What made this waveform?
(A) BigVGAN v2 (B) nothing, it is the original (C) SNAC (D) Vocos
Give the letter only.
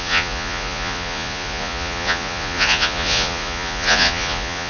D